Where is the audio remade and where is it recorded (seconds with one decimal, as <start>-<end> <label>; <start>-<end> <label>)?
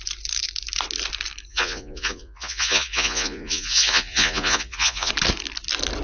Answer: 0.0-1.5 recorded; 1.5-5.1 remade; 5.1-6.0 recorded